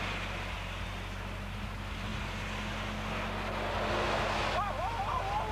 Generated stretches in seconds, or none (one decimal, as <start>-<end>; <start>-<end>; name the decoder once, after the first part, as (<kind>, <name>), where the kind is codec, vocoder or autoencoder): none